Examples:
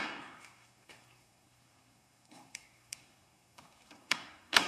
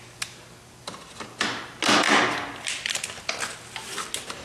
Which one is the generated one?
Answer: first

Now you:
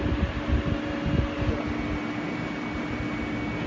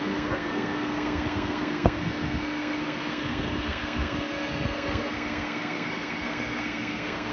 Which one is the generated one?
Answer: second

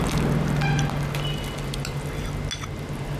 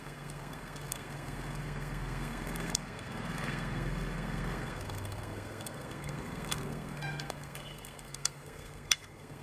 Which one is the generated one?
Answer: second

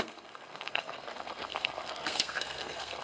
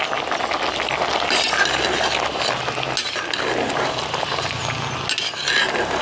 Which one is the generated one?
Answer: first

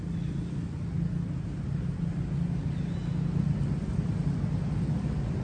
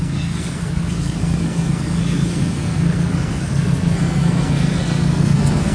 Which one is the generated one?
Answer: second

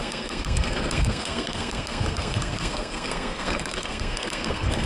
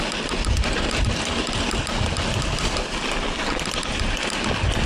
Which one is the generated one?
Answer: first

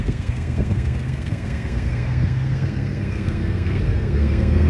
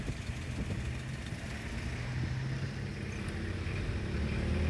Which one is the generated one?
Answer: first